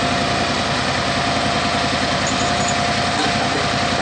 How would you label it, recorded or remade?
recorded